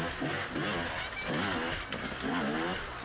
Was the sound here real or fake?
real